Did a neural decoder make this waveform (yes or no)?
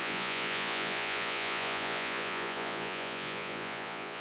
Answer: yes